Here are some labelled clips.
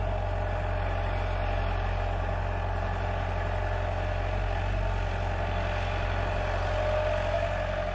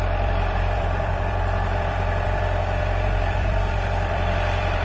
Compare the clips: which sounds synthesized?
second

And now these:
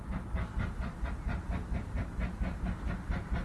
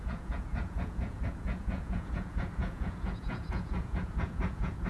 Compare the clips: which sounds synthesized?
second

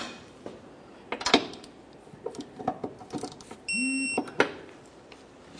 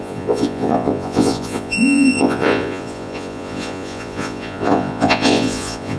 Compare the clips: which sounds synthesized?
second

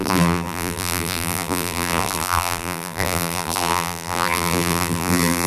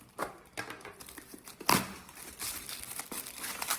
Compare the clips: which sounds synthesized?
first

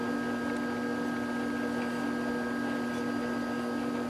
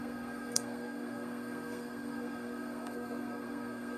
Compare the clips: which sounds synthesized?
second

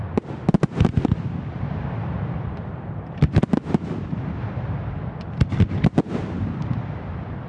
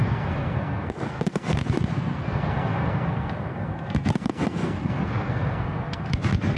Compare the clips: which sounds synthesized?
second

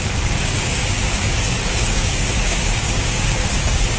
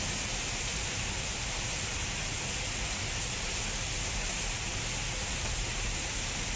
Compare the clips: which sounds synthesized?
first